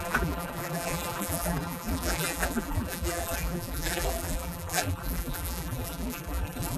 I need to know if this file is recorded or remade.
remade